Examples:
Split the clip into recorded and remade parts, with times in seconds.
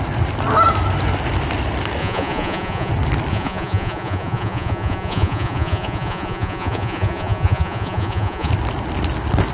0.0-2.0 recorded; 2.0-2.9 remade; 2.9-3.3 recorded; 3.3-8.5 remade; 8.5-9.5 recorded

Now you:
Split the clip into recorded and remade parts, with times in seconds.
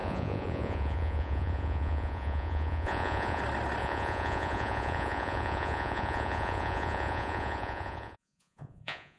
0.0-3.4 remade; 3.4-3.8 recorded; 3.8-9.2 remade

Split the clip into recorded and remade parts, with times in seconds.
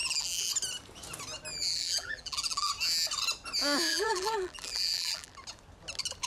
0.0-0.5 remade; 0.5-1.5 recorded; 1.5-2.7 remade; 2.7-3.9 recorded; 3.9-5.3 remade; 5.3-6.3 recorded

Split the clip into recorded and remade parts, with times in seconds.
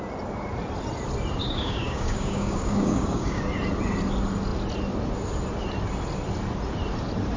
0.0-1.4 recorded; 1.4-3.4 remade; 3.4-7.4 recorded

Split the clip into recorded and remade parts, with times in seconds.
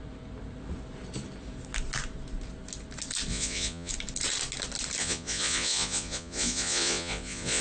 0.0-3.3 recorded; 3.3-3.9 remade; 3.9-5.0 recorded; 5.0-7.6 remade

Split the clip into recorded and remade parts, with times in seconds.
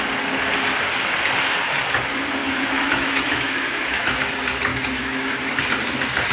0.0-2.4 recorded; 2.4-4.3 remade; 4.3-4.7 recorded; 4.7-5.6 remade; 5.6-6.3 recorded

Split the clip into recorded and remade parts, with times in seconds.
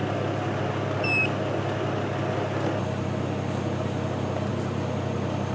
0.0-5.5 recorded